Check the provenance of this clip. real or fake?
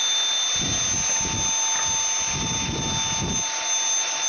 real